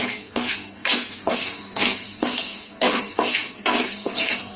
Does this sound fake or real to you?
fake